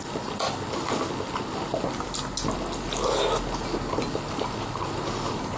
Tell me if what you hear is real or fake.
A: real